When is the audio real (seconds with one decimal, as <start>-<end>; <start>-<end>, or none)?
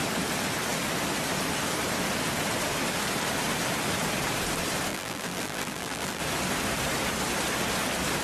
0.0-4.9; 6.2-8.2